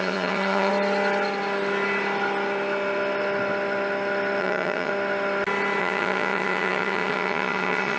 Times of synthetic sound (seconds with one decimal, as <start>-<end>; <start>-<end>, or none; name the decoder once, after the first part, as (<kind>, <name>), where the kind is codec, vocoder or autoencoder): 0.0-0.7 (vocoder, HiFi-GAN); 4.4-4.9; 5.8-8.0